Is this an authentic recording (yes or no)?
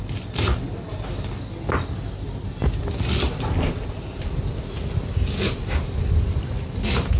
yes